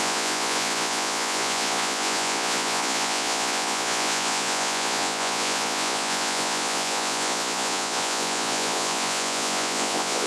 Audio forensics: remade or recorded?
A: remade